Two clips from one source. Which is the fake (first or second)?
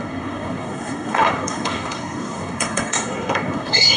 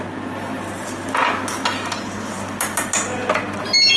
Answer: first